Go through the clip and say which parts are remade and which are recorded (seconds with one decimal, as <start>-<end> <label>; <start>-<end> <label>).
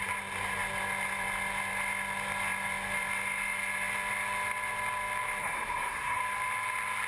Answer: 0.0-5.4 recorded; 5.4-6.2 remade; 6.2-7.1 recorded